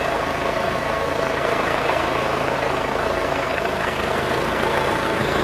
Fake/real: fake